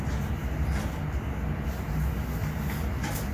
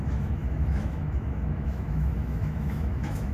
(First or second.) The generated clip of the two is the second